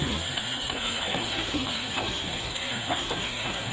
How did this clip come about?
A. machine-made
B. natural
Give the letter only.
A